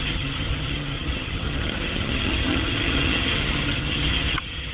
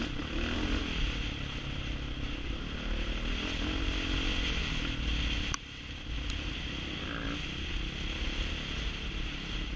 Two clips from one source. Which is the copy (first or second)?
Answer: first